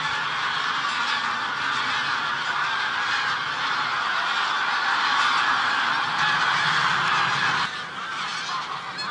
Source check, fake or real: real